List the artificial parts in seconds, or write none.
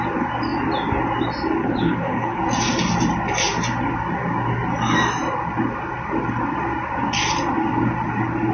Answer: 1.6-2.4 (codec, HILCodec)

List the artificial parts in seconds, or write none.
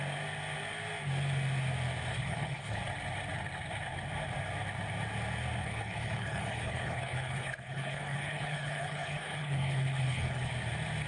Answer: 2.1-2.8 (codec, HILCodec); 5.6-10.5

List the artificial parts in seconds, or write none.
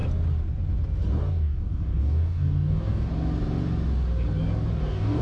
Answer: 1.2-3.1 (codec, DAC); 4.8-5.2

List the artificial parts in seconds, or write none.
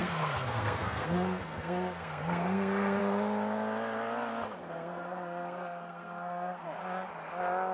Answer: 0.0-3.0 (codec, SNAC); 4.6-6.6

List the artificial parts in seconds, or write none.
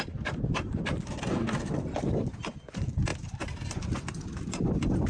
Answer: 3.1-3.8 (vocoder, BigVGAN v2)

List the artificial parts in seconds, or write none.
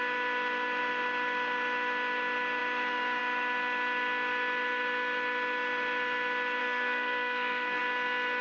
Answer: 6.6-7.8 (codec, SNAC)